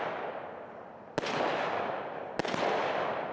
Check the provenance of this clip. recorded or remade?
recorded